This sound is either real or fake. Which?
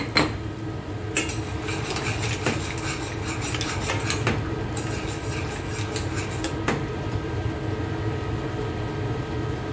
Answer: real